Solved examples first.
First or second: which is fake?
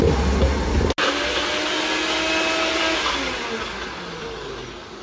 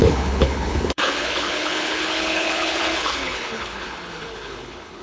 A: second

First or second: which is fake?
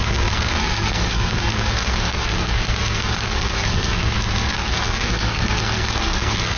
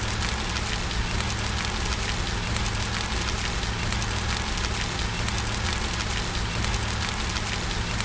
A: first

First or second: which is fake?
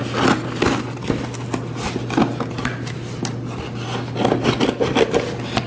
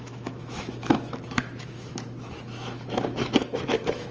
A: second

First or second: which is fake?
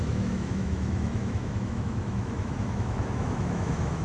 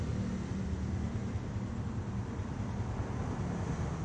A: first